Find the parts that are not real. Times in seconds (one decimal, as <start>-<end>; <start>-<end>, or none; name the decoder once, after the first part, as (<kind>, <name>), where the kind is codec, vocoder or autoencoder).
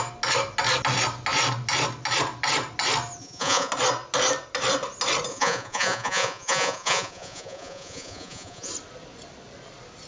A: 3.2-3.7 (vocoder, Vocos); 5.3-8.7